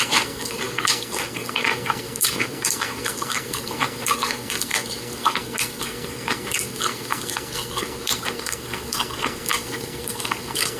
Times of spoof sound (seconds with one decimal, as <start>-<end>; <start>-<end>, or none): 0.0-10.8